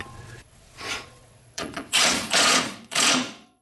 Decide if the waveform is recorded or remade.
remade